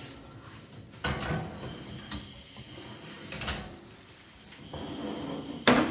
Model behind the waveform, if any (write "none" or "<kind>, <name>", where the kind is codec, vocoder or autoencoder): none